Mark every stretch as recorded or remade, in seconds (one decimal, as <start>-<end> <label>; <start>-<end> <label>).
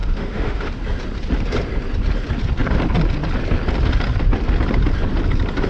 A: 0.0-0.7 remade; 0.7-5.7 recorded